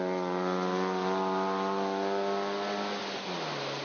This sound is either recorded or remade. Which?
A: recorded